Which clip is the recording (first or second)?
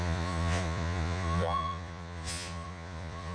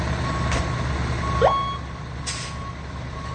second